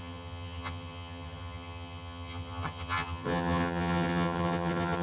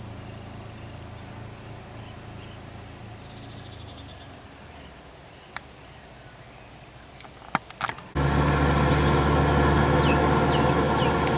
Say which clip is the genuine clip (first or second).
second